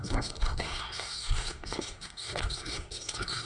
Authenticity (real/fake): fake